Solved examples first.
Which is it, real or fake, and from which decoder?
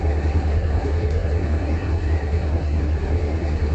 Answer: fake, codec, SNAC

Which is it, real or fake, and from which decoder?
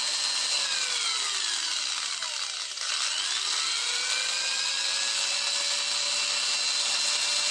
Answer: real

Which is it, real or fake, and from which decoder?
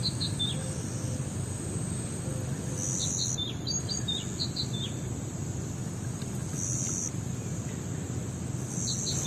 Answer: real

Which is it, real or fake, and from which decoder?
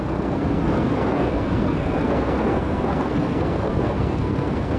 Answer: fake, codec, SNAC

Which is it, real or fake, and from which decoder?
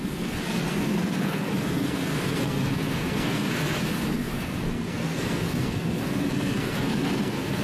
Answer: fake, codec, SNAC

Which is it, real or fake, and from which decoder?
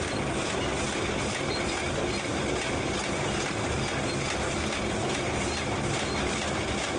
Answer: real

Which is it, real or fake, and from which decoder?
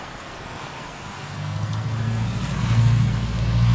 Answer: fake, codec, SNAC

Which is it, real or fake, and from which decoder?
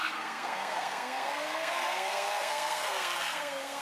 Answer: fake, codec, SNAC